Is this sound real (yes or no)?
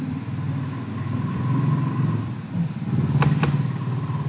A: yes